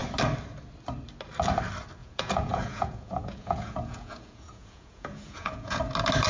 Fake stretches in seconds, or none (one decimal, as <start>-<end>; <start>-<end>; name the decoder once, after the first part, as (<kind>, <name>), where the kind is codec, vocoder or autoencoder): 2.0-5.8 (vocoder, Vocos)